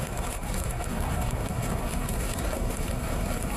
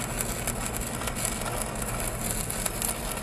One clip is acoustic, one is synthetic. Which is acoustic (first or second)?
second